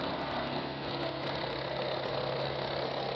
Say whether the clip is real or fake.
fake